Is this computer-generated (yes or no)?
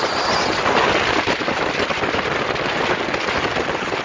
no